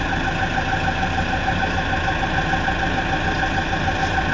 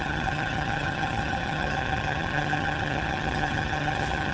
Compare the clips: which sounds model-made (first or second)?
second